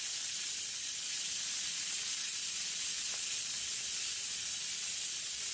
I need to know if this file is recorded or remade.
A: remade